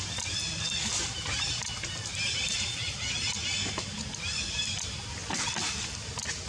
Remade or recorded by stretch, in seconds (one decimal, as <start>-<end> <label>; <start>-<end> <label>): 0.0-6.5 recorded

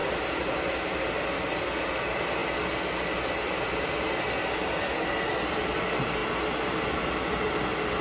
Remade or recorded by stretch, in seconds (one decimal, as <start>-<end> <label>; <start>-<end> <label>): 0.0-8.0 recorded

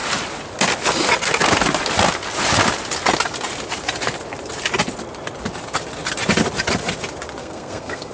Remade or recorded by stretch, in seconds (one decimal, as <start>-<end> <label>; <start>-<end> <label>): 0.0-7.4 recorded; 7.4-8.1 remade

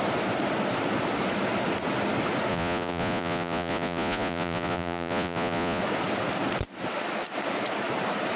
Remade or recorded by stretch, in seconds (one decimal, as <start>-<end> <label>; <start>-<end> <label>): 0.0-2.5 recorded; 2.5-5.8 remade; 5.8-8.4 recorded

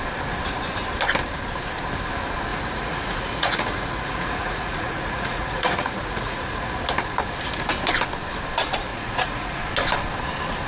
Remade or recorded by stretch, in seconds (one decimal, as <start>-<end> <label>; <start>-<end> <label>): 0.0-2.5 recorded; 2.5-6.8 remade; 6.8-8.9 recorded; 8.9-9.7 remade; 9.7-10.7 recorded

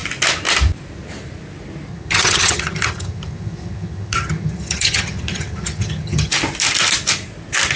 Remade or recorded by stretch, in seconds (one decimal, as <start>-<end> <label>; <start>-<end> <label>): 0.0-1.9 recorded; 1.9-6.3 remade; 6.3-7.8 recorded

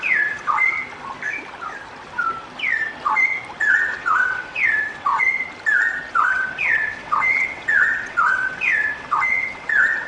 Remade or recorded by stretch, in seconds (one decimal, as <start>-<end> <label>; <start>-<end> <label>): 0.0-0.6 remade; 0.6-3.6 recorded; 3.6-5.1 remade; 5.1-6.1 recorded; 6.1-10.1 remade

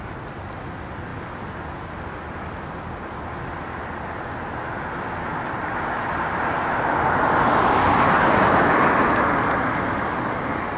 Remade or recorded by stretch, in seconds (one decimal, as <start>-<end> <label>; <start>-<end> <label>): 0.0-10.8 recorded